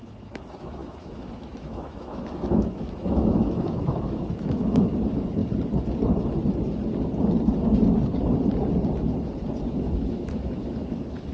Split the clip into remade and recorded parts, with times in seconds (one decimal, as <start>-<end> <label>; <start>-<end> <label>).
0.0-5.4 remade; 5.4-9.7 recorded; 9.7-11.3 remade